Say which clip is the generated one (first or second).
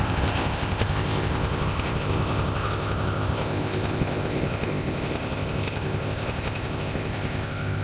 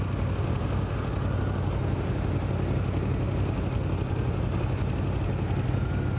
first